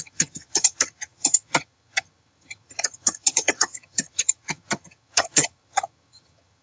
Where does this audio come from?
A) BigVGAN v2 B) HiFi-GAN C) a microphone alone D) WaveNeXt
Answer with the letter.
B